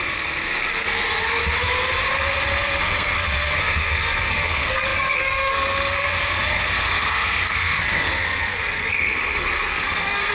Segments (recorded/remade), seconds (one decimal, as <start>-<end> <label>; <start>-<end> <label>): 0.0-1.4 remade; 1.4-2.1 recorded; 2.1-10.3 remade